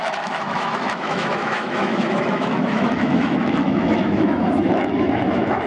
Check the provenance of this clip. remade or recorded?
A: remade